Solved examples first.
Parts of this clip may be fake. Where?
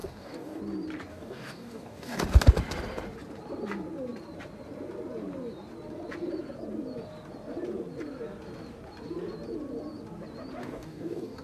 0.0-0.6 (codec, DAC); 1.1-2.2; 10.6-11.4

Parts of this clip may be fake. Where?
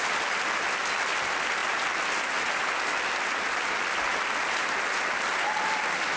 none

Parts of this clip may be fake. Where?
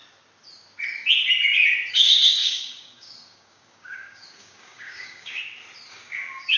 1.9-5.4 (codec, DAC); 5.9-6.6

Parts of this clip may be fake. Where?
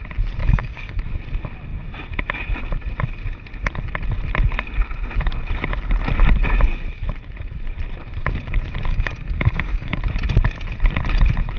0.4-1.0 (codec, DAC); 8.9-10.0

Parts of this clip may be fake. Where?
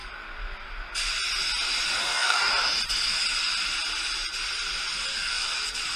2.0-2.5 (codec, DAC); 5.1-5.6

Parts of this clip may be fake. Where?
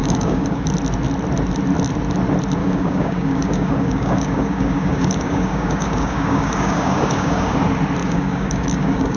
0.0-0.7 (codec, DAC); 2.6-7.6; 8.0-9.2